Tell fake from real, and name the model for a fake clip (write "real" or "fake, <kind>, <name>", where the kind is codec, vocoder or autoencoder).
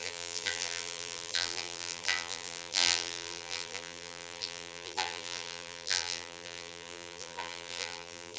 fake, vocoder, BigVGAN v2